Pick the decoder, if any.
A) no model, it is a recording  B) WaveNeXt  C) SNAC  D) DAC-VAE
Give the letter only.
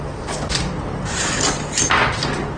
A